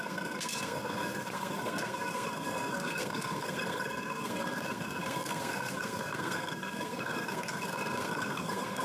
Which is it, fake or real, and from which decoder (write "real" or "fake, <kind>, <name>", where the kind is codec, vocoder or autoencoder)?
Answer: fake, codec, SNAC